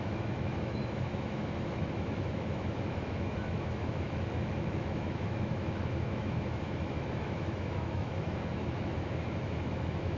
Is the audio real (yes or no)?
no